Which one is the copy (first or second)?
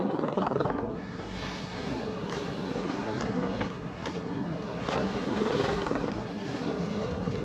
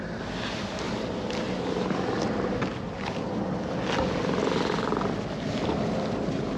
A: first